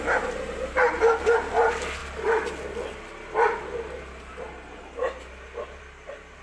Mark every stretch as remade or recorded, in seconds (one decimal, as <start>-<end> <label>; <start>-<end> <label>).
0.0-6.4 recorded